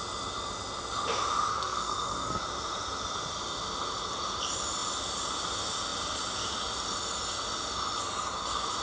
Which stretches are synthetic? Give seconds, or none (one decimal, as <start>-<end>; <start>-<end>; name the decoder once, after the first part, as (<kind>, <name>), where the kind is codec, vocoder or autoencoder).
1.5-2.4 (codec, SNAC)